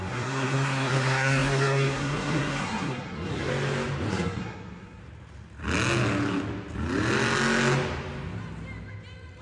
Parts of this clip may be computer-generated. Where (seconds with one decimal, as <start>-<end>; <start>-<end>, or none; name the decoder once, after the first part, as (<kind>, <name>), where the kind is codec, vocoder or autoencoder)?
0.0-3.5 (codec, SNAC); 4.1-5.0